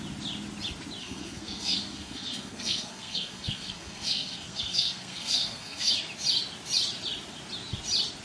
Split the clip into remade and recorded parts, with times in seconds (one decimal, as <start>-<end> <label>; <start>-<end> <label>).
0.0-1.0 recorded; 1.0-5.9 remade; 5.9-8.2 recorded